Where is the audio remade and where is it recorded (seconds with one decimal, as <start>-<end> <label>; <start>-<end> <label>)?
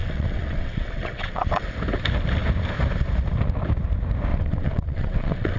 0.0-1.7 remade; 1.7-4.3 recorded; 4.3-5.6 remade